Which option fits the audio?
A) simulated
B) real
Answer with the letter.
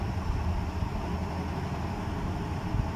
B